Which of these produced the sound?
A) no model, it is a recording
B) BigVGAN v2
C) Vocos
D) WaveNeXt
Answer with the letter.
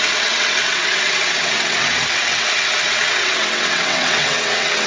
D